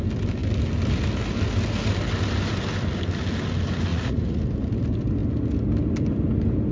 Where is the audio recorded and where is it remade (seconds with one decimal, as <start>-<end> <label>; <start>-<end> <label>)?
0.0-3.9 recorded; 3.9-4.4 remade; 4.4-6.7 recorded